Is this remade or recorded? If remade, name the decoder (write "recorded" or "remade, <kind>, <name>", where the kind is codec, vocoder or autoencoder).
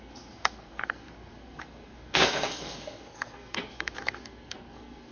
remade, codec, SNAC